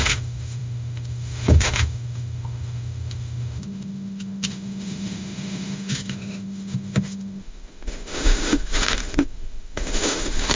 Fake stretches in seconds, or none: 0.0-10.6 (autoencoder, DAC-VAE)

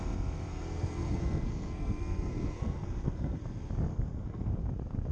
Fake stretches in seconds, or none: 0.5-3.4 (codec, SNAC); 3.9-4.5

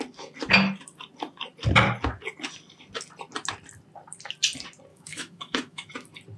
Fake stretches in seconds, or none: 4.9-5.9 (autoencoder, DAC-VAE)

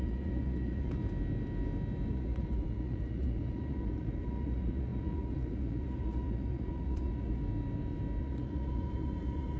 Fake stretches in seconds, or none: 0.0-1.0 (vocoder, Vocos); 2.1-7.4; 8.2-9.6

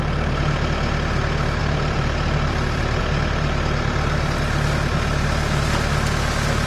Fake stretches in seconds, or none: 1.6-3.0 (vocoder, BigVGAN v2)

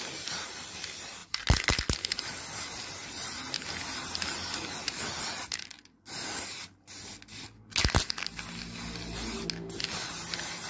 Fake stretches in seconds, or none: none